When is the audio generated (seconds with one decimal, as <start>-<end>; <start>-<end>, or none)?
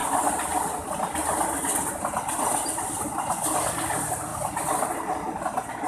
none